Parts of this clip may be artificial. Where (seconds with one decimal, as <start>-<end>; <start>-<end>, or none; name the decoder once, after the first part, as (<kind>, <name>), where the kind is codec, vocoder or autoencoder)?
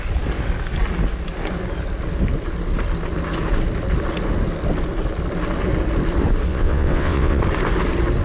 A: 6.5-7.4 (vocoder, WaveNeXt)